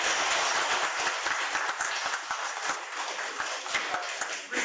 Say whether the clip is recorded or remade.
recorded